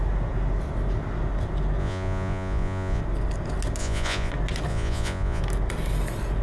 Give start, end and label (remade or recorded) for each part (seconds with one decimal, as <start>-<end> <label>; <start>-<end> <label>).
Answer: 0.0-1.8 recorded; 1.8-3.0 remade; 3.0-3.8 recorded; 3.8-4.3 remade; 4.3-4.7 recorded; 4.7-5.4 remade; 5.4-6.4 recorded